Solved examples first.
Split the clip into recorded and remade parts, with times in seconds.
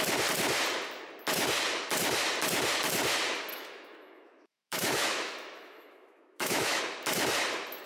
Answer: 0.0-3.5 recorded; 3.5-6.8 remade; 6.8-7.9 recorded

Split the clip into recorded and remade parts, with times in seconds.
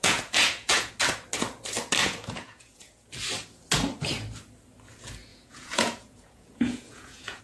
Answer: 0.0-0.9 remade; 0.9-2.0 recorded; 2.0-3.1 remade; 3.1-5.3 recorded; 5.3-7.4 remade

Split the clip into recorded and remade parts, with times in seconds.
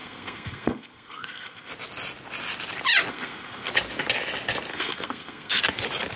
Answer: 0.0-1.7 remade; 1.7-3.1 recorded; 3.1-3.7 remade; 3.7-4.7 recorded; 4.7-5.6 remade; 5.6-6.2 recorded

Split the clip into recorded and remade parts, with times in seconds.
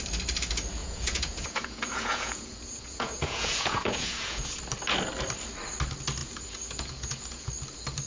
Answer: 0.0-0.8 recorded; 0.8-4.6 remade; 4.6-6.2 recorded; 6.2-7.5 remade; 7.5-8.1 recorded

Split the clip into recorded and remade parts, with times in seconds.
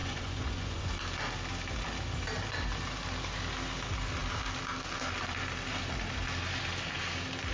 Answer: 0.0-0.9 remade; 0.9-7.5 recorded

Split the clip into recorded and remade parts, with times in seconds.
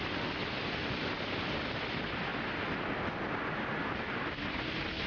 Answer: 0.0-5.1 recorded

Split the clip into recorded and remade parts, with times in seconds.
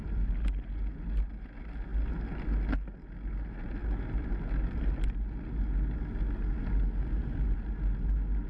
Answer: 0.0-8.5 recorded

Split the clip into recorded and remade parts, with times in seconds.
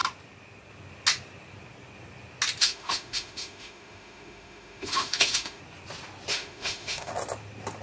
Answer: 0.0-2.6 recorded; 2.6-5.6 remade; 5.6-6.3 recorded; 6.3-7.1 remade; 7.1-7.8 recorded